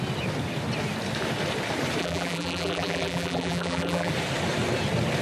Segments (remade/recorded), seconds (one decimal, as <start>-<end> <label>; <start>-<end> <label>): 0.0-2.0 recorded; 2.0-4.1 remade; 4.1-5.2 recorded